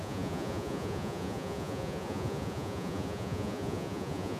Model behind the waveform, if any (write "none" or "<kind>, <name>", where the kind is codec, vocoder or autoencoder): vocoder, Vocos